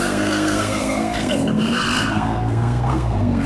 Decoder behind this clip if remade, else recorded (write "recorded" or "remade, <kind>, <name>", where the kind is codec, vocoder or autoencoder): remade, codec, SNAC